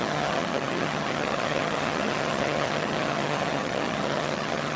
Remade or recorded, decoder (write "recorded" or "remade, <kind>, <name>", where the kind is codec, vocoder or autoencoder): remade, vocoder, HiFi-GAN